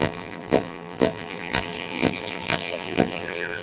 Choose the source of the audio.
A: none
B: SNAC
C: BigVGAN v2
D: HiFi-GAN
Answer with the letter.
C